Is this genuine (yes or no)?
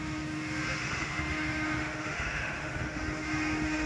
no